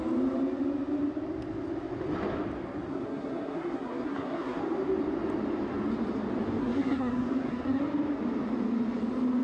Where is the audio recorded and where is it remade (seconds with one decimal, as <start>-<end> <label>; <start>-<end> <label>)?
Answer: 0.0-2.9 recorded; 2.9-4.6 remade; 4.6-6.6 recorded; 6.6-7.8 remade; 7.8-9.4 recorded